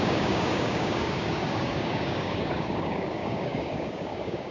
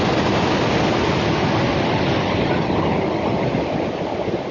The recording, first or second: second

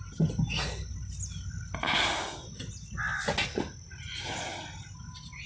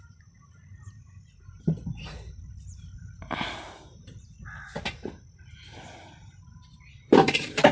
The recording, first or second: first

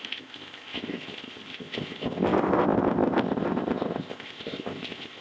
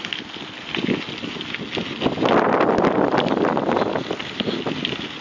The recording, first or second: second